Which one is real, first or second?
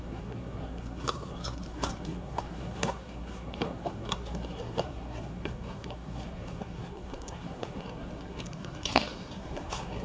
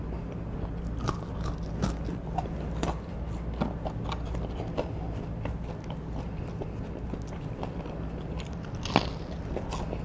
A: second